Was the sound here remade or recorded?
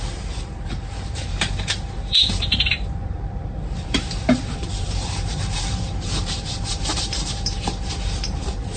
remade